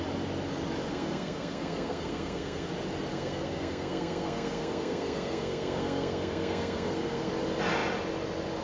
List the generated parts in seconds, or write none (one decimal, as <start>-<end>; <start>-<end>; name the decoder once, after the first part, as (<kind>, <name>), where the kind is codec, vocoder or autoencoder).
0.9-2.7 (codec, SNAC); 3.1-7.3